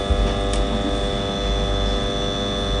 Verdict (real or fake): real